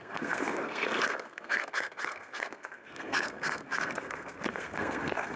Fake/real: fake